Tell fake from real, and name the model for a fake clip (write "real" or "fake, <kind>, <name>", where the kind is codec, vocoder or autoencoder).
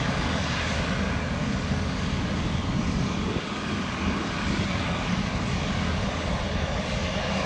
fake, codec, DAC